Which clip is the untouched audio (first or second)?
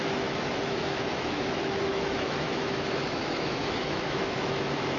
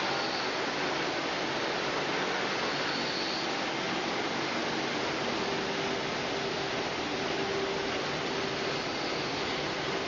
second